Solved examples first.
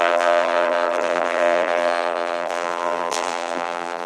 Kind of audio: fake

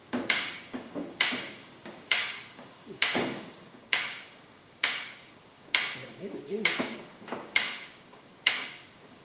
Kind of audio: fake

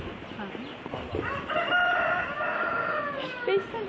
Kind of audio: real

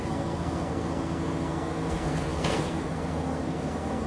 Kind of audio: fake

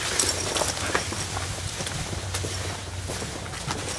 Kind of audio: real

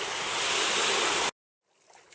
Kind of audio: real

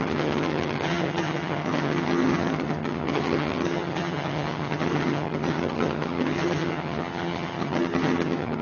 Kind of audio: fake